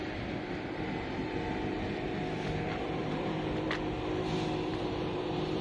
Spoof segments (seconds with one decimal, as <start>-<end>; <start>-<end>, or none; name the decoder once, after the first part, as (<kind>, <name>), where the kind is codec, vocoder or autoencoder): 3.0-3.8 (vocoder, BigVGAN v2); 4.7-5.6